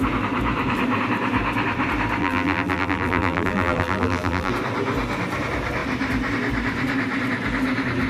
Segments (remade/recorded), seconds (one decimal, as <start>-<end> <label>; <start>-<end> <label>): 0.0-2.2 recorded; 2.2-4.5 remade; 4.5-8.1 recorded